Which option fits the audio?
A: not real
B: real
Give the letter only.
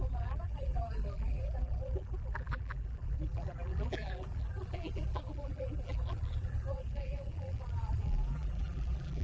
A